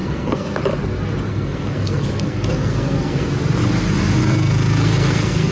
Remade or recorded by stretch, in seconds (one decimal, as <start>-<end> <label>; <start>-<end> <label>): 0.0-0.6 remade; 0.6-1.3 recorded; 1.3-3.3 remade; 3.3-4.2 recorded; 4.2-5.5 remade